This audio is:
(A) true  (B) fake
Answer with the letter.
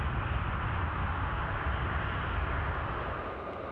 A